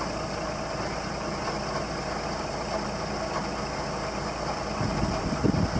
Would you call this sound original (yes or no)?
yes